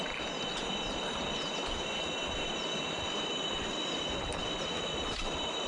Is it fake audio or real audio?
real